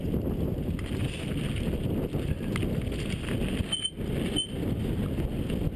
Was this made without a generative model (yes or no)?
yes